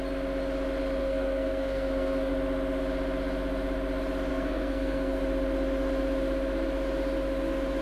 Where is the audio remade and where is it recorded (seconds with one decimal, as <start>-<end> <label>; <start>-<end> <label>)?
0.0-1.0 recorded; 1.0-2.3 remade; 2.3-4.3 recorded; 4.3-5.2 remade; 5.2-7.8 recorded